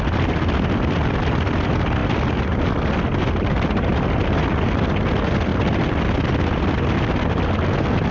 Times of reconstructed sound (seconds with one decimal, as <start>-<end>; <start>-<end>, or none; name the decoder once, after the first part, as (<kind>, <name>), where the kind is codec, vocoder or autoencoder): none